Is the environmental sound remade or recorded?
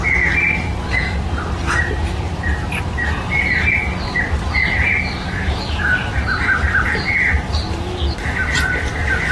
recorded